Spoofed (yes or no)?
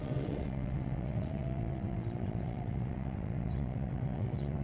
yes